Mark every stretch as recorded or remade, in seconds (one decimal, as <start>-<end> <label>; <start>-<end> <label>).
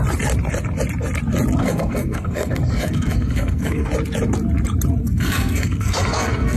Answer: 0.0-1.6 recorded; 1.6-3.9 remade; 3.9-5.0 recorded; 5.0-6.6 remade